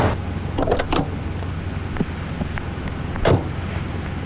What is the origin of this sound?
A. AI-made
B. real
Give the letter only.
B